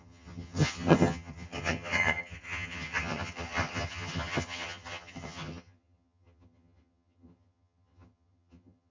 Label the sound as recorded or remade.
remade